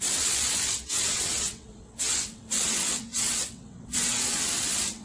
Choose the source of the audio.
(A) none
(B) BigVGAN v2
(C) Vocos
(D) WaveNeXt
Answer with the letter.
D